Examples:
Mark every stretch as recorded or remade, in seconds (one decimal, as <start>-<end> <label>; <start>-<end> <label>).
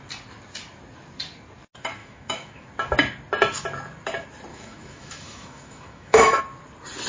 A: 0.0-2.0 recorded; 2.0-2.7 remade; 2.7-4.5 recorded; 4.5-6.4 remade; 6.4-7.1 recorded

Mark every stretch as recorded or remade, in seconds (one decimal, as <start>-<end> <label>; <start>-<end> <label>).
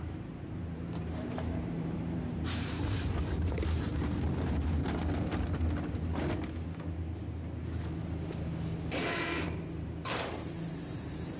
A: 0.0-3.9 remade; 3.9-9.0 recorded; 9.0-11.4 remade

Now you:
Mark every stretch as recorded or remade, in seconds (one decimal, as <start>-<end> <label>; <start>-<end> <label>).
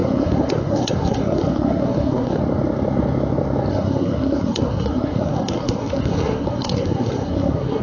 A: 0.0-2.4 remade; 2.4-3.7 recorded; 3.7-7.8 remade